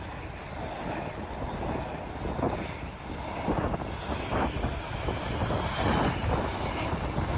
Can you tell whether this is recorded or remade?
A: recorded